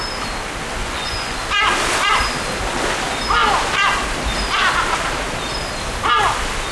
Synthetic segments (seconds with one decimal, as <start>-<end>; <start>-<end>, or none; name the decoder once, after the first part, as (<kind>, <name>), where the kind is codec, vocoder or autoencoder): 0.8-1.4 (vocoder, Vocos)